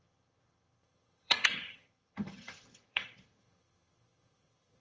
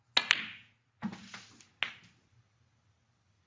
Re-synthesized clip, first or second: first